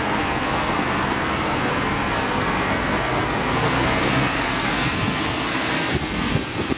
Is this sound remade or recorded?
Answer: remade